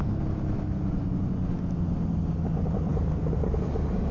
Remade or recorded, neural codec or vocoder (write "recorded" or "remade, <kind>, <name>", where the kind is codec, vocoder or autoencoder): recorded